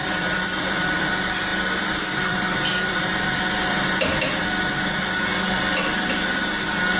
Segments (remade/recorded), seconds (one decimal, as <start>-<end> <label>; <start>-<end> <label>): 0.0-1.1 remade; 1.1-1.5 recorded; 1.5-3.8 remade; 3.8-7.0 recorded